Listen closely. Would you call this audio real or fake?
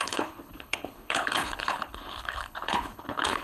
fake